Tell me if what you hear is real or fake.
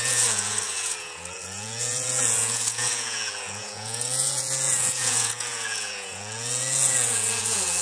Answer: fake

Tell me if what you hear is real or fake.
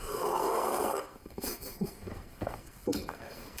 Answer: fake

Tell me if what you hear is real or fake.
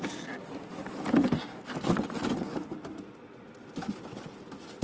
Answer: real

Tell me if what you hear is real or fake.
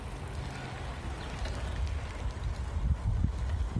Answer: real